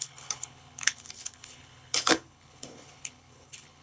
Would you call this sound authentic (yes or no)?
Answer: no